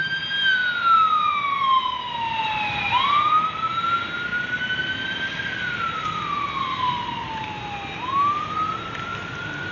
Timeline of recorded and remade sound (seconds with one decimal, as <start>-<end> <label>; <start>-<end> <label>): 0.0-9.7 recorded